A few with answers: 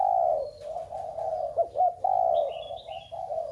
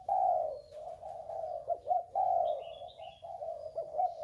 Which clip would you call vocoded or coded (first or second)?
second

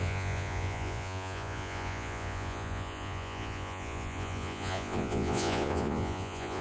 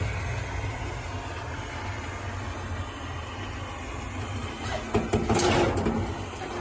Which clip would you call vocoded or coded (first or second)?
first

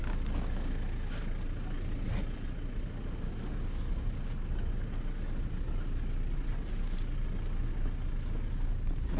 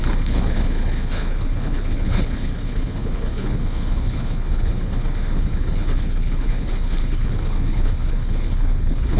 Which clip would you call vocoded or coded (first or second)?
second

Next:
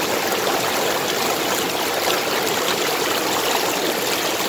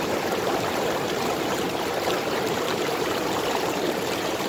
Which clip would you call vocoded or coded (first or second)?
second